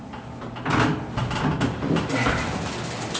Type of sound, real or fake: real